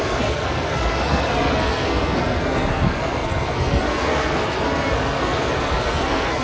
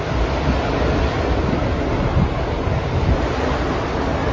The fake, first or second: first